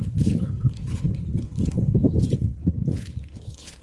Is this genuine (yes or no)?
no